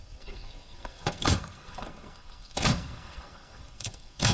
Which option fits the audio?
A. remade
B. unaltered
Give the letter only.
A